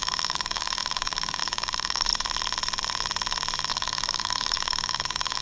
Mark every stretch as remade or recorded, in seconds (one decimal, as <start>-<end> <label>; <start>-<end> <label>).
0.0-2.1 remade; 2.1-3.7 recorded; 3.7-5.4 remade